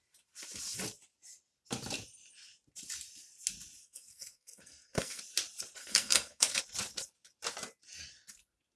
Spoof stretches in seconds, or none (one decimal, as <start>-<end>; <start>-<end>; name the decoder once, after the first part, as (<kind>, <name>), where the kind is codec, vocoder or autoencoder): 3.8-5.2 (codec, SNAC); 5.8-6.6